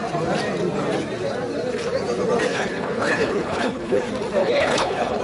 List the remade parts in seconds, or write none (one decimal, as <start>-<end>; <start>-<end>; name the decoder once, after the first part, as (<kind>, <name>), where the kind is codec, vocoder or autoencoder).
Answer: 2.5-4.0 (codec, HILCodec); 4.4-5.2

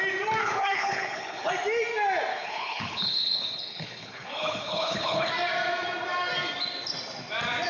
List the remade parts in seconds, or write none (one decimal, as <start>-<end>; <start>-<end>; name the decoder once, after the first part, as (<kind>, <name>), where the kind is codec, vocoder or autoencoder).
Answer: 0.4-1.5 (codec, HILCodec); 2.3-5.3

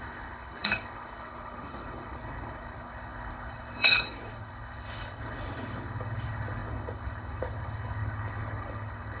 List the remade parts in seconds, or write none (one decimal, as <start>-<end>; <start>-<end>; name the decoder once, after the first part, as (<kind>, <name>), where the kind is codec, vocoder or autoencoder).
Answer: 0.0-9.2 (codec, HILCodec)